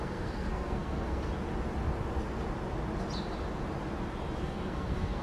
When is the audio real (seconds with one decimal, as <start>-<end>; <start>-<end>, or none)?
1.3-4.4